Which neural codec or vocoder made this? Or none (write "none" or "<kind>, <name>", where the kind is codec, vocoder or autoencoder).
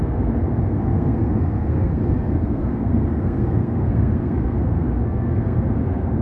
codec, SNAC